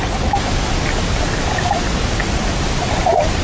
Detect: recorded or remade recorded